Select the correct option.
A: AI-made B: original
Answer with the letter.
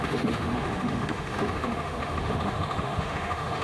A